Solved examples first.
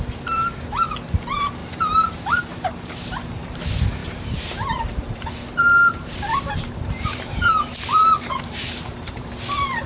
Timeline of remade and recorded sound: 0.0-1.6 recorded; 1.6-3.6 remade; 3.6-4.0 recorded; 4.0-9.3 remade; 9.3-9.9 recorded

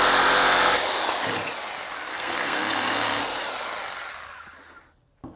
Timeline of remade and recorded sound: 0.0-2.1 recorded; 2.1-3.2 remade; 3.2-5.4 recorded

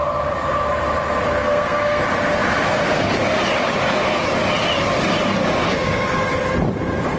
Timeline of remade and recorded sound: 0.0-1.4 recorded; 1.4-2.0 remade; 2.0-7.2 recorded

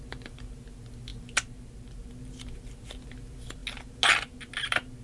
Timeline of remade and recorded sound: 0.0-5.0 recorded

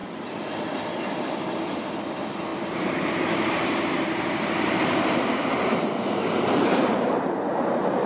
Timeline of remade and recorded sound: 0.0-2.5 recorded; 2.5-7.4 remade; 7.4-8.1 recorded

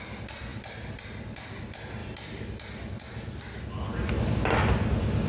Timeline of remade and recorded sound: 0.0-5.3 recorded